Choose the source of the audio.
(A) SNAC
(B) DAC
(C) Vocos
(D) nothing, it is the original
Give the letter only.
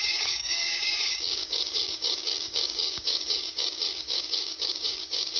B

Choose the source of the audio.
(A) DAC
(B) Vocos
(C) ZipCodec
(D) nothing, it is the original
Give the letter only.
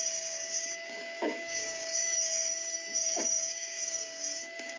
A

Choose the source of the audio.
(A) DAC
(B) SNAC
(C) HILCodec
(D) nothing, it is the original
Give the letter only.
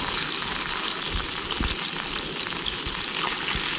D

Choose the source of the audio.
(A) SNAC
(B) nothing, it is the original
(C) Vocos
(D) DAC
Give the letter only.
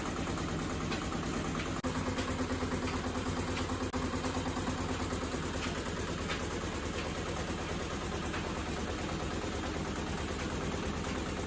B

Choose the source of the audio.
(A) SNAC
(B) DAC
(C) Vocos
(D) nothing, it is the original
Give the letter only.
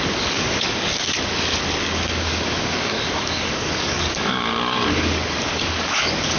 B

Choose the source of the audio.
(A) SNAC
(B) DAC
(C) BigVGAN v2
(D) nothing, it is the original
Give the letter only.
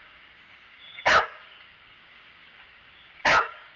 B